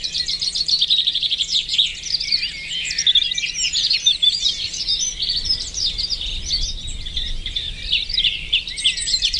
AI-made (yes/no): yes